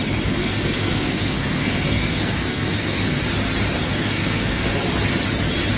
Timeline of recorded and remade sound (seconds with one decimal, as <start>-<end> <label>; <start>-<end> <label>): 0.0-0.4 recorded; 0.4-3.2 remade; 3.2-3.8 recorded; 3.8-4.7 remade; 4.7-5.8 recorded